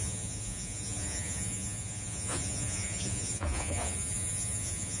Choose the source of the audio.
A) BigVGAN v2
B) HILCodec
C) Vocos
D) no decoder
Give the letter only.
C